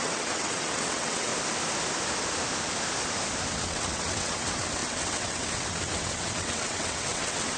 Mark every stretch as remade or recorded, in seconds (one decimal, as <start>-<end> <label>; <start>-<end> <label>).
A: 0.0-1.3 remade; 1.3-3.5 recorded; 3.5-7.6 remade